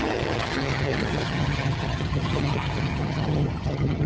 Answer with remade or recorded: remade